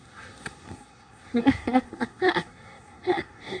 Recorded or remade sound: remade